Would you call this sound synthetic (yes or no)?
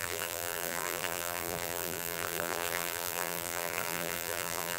yes